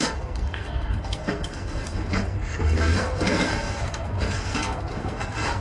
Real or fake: fake